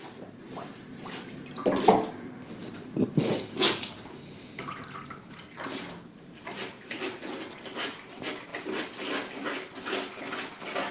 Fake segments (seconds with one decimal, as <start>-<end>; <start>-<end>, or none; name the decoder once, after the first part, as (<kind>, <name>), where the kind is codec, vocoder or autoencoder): none